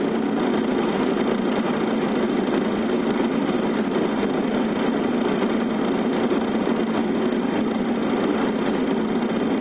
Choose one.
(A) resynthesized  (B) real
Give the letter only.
B